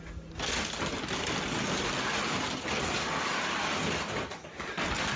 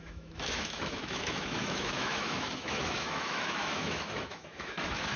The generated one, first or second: second